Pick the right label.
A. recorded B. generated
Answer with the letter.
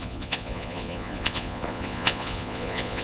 B